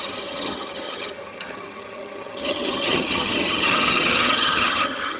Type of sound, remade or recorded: remade